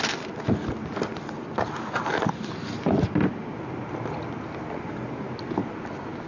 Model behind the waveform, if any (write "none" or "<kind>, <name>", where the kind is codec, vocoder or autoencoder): none